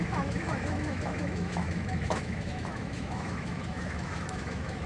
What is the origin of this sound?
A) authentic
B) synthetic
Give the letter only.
B